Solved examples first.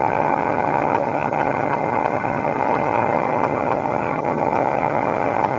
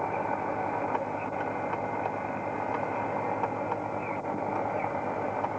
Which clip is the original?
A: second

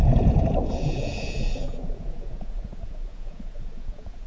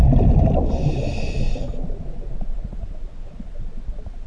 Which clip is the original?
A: second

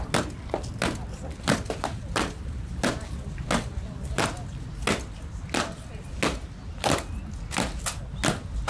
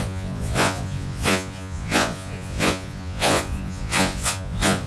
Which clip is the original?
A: first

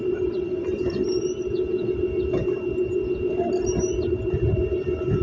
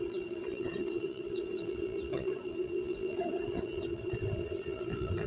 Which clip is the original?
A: first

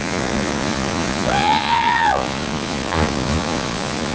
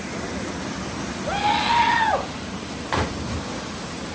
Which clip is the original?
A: second